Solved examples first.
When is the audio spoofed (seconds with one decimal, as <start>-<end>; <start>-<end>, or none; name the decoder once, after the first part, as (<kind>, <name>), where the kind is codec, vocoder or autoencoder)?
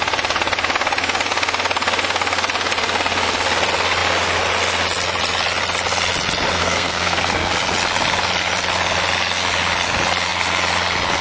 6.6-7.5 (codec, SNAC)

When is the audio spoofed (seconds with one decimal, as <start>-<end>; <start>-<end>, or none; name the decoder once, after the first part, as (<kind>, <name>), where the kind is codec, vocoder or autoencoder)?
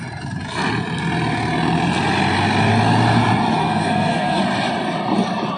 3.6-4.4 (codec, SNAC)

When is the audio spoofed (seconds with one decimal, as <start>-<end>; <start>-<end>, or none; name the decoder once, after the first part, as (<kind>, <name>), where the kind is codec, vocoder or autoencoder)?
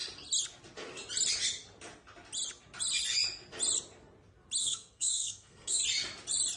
4.6-5.8 (codec, SNAC)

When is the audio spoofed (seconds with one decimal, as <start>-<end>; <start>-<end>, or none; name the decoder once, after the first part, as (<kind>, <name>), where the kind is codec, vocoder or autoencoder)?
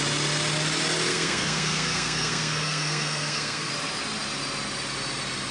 1.1-3.7 (codec, SNAC)